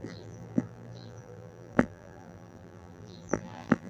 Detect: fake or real fake